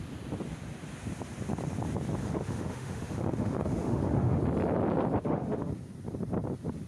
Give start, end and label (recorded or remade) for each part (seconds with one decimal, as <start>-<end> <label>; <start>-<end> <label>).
0.0-2.2 recorded; 2.2-4.4 remade; 4.4-5.2 recorded; 5.2-5.7 remade; 5.7-6.9 recorded